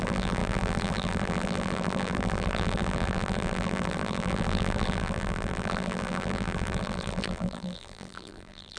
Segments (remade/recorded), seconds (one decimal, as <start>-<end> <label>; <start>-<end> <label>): 0.0-8.8 remade